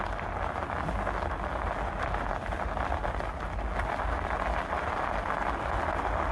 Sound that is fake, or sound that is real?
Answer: real